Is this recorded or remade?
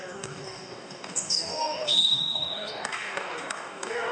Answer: remade